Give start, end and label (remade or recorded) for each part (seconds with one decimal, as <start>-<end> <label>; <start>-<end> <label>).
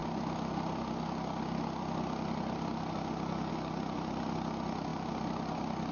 0.0-5.9 recorded